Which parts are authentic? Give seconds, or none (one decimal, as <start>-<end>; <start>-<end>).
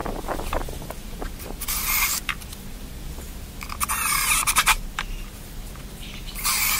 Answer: 4.6-6.8